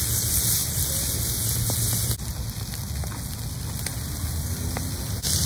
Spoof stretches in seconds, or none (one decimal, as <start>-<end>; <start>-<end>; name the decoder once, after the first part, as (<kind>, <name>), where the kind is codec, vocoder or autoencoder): none